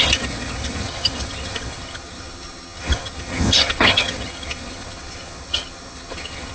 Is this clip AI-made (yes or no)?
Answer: yes